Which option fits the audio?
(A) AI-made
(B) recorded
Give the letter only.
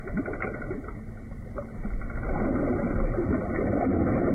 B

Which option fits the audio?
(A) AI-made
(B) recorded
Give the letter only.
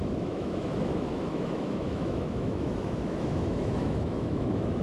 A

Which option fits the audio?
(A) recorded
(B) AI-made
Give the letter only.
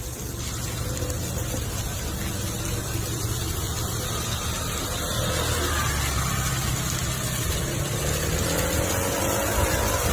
A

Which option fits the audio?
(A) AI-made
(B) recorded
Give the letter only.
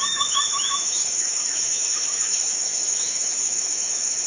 A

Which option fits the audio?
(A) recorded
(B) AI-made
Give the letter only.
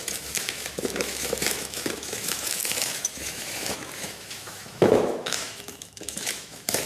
B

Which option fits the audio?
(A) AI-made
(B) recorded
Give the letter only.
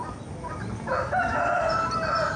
B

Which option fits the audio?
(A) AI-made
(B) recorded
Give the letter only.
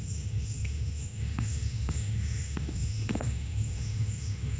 A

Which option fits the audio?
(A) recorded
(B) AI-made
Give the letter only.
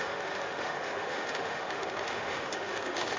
B